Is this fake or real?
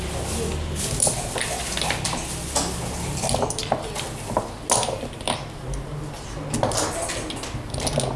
real